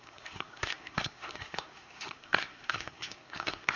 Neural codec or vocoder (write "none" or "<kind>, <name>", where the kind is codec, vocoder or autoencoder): codec, SNAC